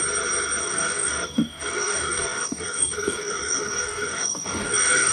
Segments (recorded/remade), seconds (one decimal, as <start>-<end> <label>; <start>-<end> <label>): 0.0-0.6 recorded; 0.6-5.1 remade